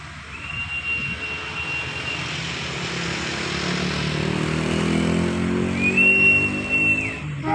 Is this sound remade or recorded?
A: recorded